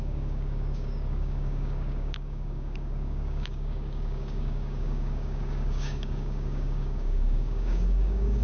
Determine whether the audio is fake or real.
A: fake